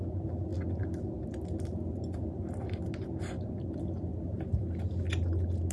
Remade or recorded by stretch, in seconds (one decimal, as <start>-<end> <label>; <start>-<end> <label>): 0.0-5.7 recorded